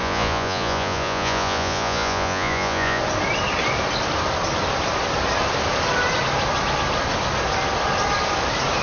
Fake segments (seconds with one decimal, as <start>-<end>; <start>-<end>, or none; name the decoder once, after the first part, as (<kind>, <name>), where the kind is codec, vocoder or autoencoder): 0.0-3.0 (vocoder, Vocos)